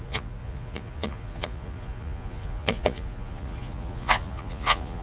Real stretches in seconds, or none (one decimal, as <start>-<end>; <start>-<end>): none